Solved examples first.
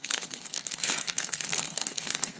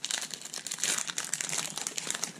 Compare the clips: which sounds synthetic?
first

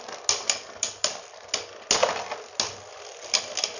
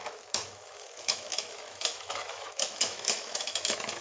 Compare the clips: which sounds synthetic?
second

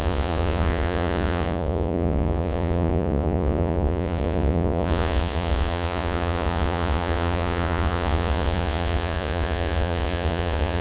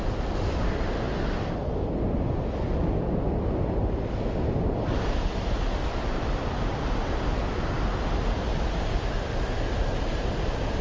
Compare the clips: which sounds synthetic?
first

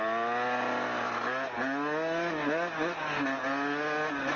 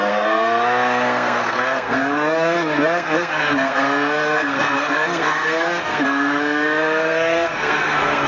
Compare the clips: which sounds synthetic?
second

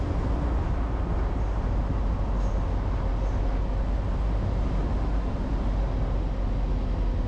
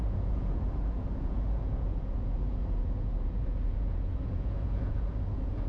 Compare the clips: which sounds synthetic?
second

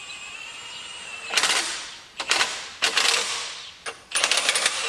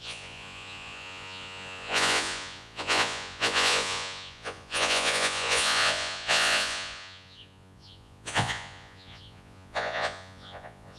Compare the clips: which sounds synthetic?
second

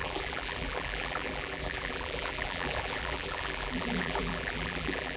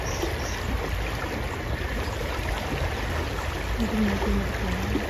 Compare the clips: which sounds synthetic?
first